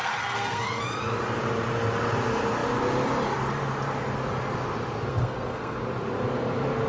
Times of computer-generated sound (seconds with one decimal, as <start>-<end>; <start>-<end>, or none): 0.0-0.8; 5.1-5.8